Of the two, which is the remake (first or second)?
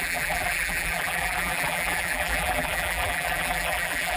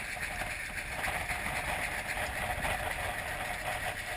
first